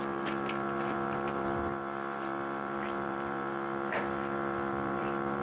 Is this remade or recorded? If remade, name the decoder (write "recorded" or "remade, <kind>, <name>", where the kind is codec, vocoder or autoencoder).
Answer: remade, vocoder, BigVGAN v2